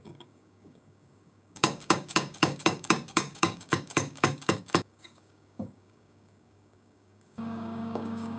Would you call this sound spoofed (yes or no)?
yes